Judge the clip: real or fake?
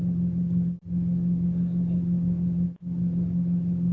real